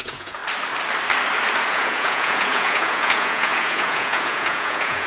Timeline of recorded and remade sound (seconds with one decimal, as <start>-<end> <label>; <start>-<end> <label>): 0.0-0.4 remade; 0.4-1.7 recorded; 1.7-5.1 remade